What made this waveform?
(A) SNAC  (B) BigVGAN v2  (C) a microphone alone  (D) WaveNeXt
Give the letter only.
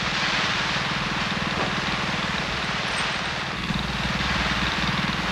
C